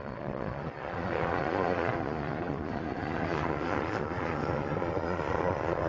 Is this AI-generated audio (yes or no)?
yes